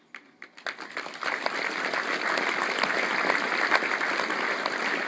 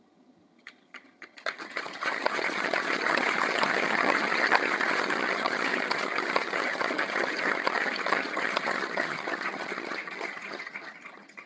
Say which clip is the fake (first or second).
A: second